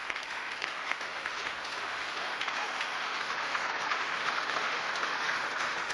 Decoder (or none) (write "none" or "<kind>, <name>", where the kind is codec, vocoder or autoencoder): autoencoder, DAC-VAE